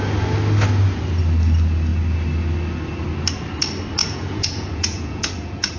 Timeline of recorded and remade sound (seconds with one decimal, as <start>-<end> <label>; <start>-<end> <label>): 0.0-4.0 recorded; 4.0-5.8 remade